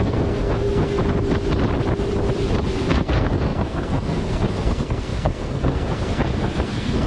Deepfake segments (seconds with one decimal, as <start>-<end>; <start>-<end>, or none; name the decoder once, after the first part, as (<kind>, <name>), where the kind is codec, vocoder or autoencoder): 0.0-1.0 (codec, SNAC); 2.9-7.1